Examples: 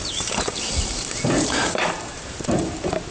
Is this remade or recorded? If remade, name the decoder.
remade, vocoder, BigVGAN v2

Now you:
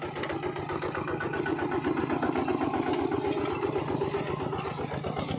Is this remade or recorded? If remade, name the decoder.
recorded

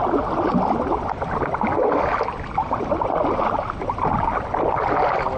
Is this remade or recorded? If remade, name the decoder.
recorded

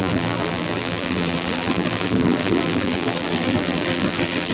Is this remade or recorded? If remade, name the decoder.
remade, vocoder, BigVGAN v2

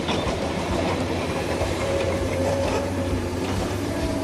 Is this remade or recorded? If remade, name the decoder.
remade, vocoder, BigVGAN v2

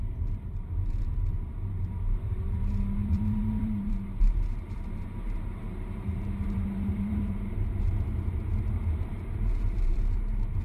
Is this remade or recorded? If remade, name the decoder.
remade, vocoder, BigVGAN v2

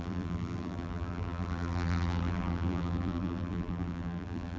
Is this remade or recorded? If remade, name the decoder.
remade, vocoder, BigVGAN v2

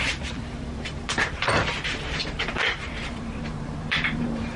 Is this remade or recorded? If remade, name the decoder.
remade, vocoder, BigVGAN v2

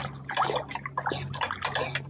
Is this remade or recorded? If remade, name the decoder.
recorded